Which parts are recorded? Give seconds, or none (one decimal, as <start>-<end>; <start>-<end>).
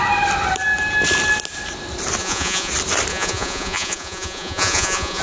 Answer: 0.0-2.2; 2.7-3.1